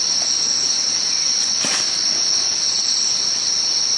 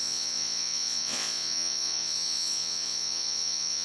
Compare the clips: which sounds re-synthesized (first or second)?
second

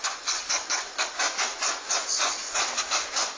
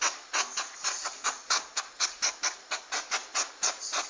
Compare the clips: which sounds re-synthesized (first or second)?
first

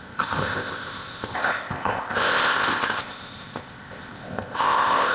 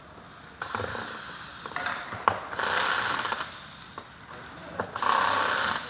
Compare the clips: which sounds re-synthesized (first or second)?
first